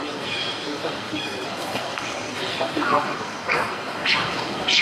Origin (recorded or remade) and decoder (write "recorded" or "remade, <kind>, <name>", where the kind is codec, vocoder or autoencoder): remade, codec, SNAC